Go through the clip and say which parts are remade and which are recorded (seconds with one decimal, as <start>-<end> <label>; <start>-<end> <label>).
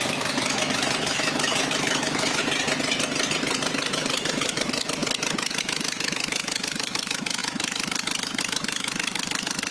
0.0-2.4 remade; 2.4-3.9 recorded; 3.9-5.0 remade; 5.0-5.6 recorded; 5.6-9.7 remade